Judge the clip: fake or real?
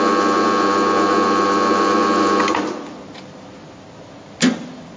real